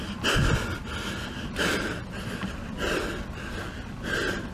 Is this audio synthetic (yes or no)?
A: no